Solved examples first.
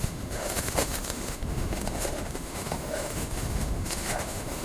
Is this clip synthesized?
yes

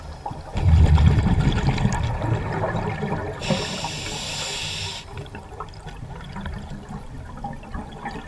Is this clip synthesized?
no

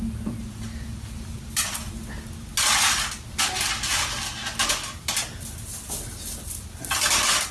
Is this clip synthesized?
no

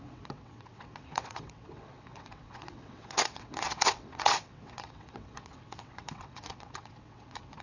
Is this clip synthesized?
yes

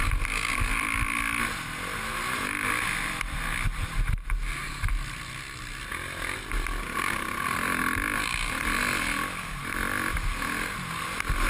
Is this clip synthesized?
no